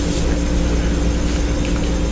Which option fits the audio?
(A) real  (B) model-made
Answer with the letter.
A